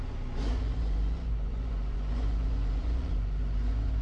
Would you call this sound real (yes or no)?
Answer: no